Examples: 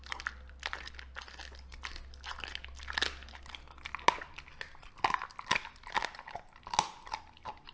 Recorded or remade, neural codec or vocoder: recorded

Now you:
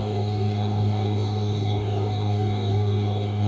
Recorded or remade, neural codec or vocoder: remade, codec, DAC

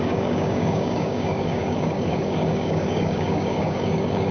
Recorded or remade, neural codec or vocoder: remade, codec, DAC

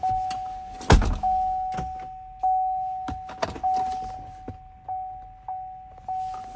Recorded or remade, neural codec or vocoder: recorded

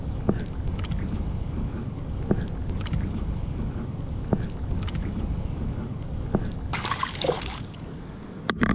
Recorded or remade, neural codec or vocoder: remade, codec, DAC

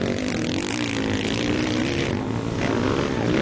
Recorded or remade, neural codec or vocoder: recorded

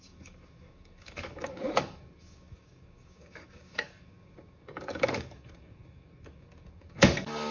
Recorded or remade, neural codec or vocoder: remade, codec, DAC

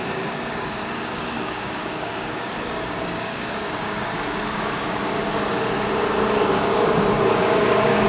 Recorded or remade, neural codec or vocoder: remade, codec, DAC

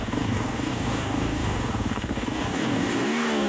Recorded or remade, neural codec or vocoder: remade, codec, DAC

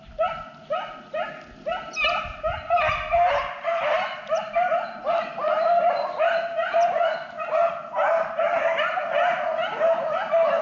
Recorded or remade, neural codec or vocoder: recorded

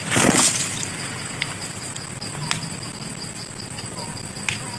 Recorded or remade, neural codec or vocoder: recorded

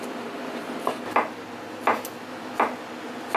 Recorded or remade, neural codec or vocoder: recorded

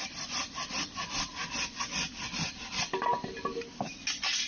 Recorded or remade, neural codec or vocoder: recorded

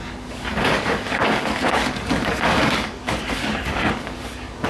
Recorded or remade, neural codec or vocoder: remade, codec, DAC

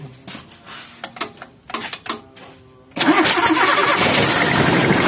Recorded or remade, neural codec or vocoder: recorded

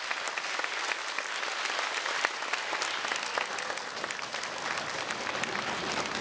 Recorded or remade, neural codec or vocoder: recorded